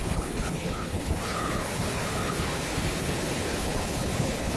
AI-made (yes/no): yes